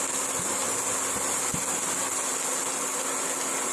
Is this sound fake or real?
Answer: real